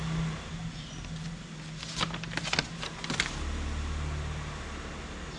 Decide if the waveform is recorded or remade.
recorded